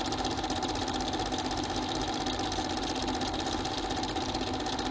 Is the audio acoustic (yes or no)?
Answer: yes